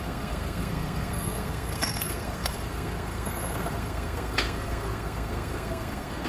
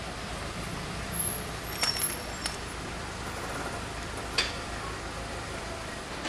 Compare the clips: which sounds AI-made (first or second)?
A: first